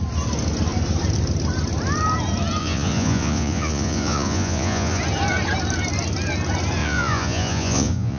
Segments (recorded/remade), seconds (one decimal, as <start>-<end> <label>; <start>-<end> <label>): 0.0-2.6 recorded; 2.6-5.0 remade; 5.0-6.8 recorded; 6.8-8.2 remade